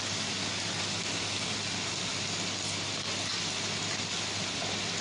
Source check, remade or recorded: recorded